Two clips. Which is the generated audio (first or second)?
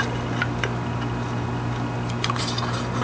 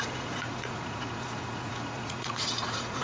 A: second